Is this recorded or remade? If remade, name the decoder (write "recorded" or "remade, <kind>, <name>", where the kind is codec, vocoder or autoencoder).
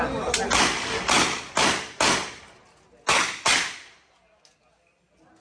recorded